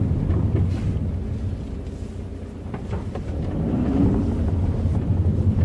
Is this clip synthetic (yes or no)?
no